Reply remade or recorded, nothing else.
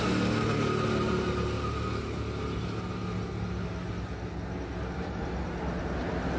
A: recorded